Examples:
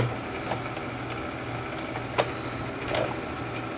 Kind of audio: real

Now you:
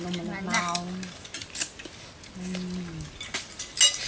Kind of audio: real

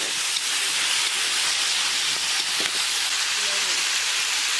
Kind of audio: real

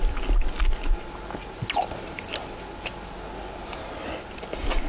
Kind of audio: real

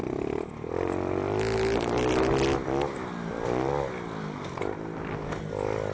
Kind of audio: real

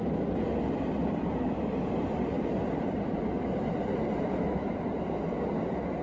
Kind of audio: real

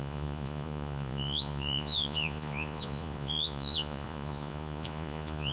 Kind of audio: fake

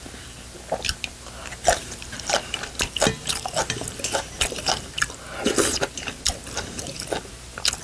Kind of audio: real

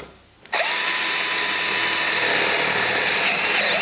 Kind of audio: real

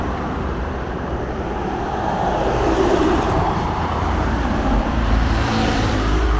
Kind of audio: fake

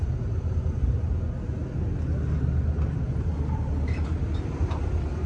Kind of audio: real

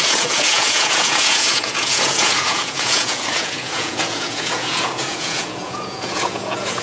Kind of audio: fake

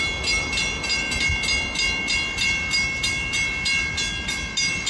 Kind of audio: real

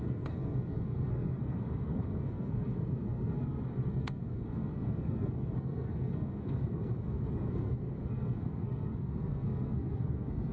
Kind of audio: fake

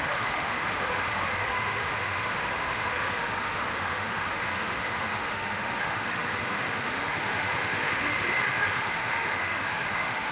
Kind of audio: fake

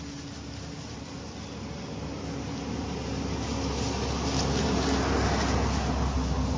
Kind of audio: real